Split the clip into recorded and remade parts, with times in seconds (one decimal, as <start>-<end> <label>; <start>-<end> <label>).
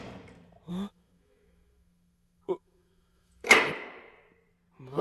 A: 0.0-0.7 recorded; 0.7-3.7 remade; 3.7-5.0 recorded